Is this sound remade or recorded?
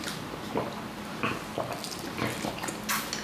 recorded